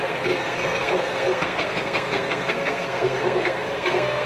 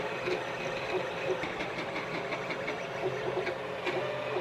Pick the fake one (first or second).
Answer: first